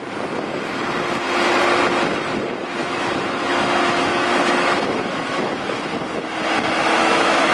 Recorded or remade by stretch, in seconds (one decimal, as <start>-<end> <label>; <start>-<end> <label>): 0.0-2.8 recorded; 2.8-5.9 remade; 5.9-6.8 recorded; 6.8-7.5 remade